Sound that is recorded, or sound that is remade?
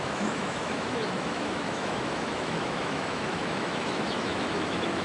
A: remade